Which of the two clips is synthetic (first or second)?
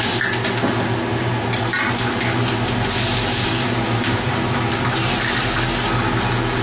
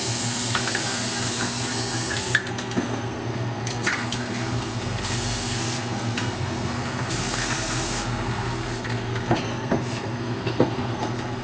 second